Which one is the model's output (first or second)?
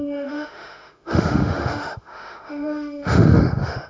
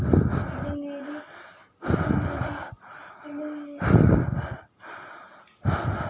first